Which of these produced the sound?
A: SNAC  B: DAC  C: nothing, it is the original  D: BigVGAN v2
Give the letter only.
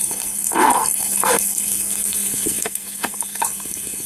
A